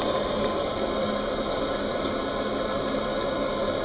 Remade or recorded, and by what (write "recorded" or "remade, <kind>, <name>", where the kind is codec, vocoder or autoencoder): recorded